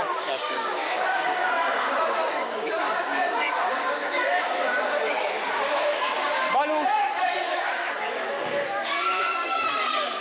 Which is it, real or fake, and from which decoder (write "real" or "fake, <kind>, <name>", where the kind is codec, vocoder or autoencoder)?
fake, codec, DAC